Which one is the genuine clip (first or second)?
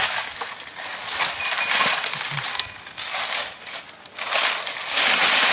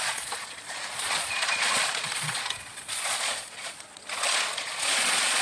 first